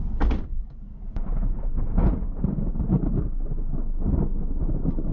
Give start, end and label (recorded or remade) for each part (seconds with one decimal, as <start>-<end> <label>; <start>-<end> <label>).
0.0-0.5 recorded; 0.5-3.6 remade; 3.6-5.1 recorded